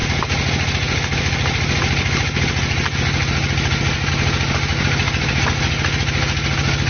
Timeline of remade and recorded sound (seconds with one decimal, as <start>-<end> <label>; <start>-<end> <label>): 0.0-4.7 recorded; 4.7-5.4 remade; 5.4-6.9 recorded